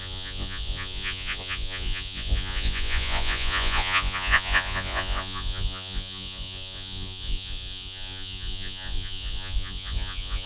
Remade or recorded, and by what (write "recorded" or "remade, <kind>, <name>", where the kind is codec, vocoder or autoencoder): remade, vocoder, Vocos